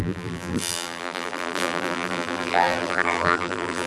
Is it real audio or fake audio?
fake